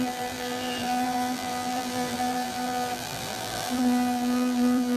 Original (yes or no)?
no